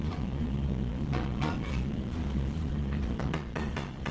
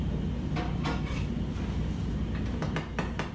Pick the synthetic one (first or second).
first